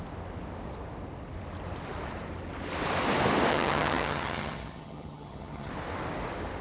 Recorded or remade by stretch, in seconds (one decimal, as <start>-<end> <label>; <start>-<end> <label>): 0.0-3.5 recorded; 3.5-5.7 remade; 5.7-6.6 recorded